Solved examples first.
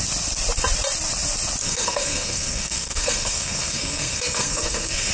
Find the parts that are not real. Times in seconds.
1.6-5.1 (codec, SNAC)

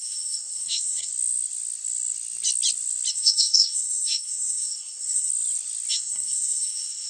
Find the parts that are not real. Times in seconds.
0.0-1.1 (codec, SNAC); 3.1-5.3; 5.9-7.1

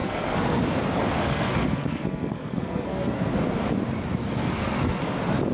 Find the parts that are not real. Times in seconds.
0.0-0.6 (codec, SNAC); 1.2-3.3; 4.2-5.0

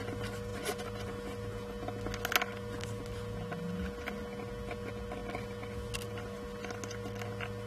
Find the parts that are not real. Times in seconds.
none

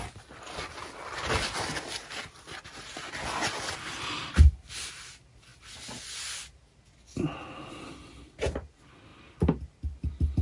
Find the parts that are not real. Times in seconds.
none

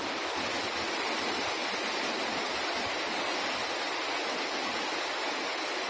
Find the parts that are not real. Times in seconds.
none